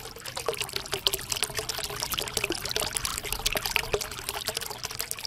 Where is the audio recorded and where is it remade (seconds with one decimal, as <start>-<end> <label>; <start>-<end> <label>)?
0.0-5.3 recorded